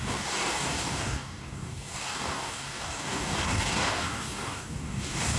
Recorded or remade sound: remade